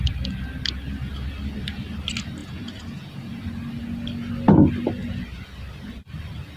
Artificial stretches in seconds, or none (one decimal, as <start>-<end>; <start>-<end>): 2.4-3.1